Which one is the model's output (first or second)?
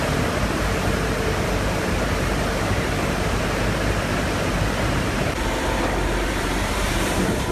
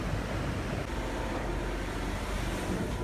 first